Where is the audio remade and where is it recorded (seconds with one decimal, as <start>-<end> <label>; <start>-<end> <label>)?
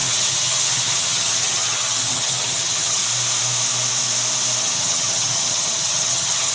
0.0-3.0 remade; 3.0-4.6 recorded; 4.6-6.5 remade